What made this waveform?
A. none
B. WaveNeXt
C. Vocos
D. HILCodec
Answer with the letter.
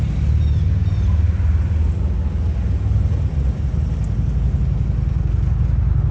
A